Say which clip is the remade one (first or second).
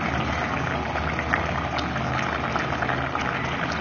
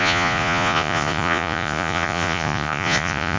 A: second